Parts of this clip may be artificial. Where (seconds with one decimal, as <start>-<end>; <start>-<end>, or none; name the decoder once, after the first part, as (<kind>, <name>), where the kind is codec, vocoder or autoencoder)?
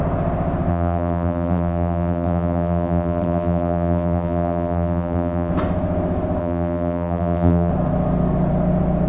0.7-5.5 (vocoder, BigVGAN v2); 6.4-7.7